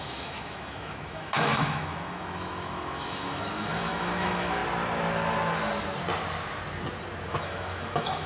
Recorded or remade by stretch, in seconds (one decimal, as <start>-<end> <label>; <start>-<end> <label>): 0.0-4.6 remade; 4.6-7.3 recorded; 7.3-8.3 remade